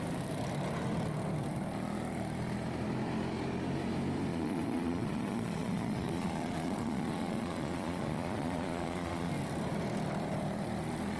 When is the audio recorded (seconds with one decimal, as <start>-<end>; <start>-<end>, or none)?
0.0-4.3; 9.3-11.2